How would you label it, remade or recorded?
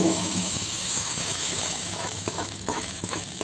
remade